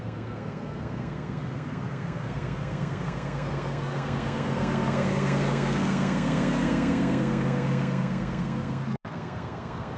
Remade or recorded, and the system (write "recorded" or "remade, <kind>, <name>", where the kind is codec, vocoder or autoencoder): remade, codec, SNAC